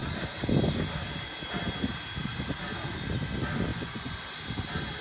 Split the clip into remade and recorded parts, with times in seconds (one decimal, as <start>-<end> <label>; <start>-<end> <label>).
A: 0.0-3.7 recorded; 3.7-4.2 remade; 4.2-5.0 recorded